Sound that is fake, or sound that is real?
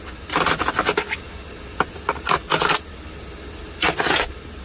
real